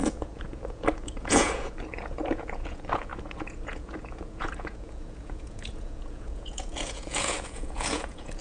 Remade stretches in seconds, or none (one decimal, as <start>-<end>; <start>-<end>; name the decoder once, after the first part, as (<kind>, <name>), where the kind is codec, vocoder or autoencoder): 0.0-8.4 (vocoder, Vocos)